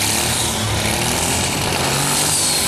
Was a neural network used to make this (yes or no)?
no